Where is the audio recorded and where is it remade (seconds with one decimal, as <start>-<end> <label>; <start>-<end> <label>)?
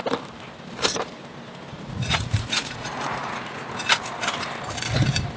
0.0-1.7 recorded; 1.7-3.7 remade; 3.7-5.4 recorded